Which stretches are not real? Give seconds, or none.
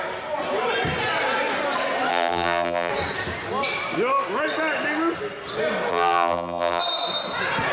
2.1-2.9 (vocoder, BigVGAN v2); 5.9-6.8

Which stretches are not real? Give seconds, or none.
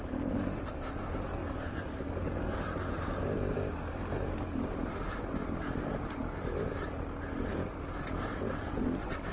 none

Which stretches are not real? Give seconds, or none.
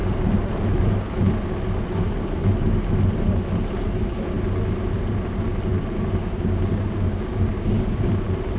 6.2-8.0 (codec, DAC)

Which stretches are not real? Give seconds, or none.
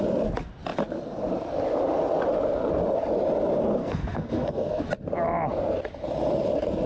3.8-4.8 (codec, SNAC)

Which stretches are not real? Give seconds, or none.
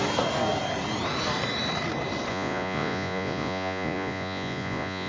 2.3-5.1 (vocoder, Vocos)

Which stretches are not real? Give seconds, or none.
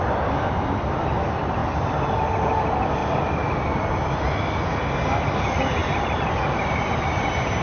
5.8-7.6 (vocoder, BigVGAN v2)